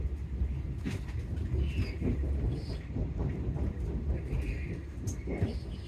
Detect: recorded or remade recorded